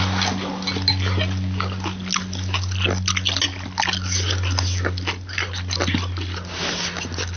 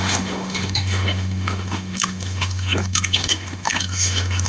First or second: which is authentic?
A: first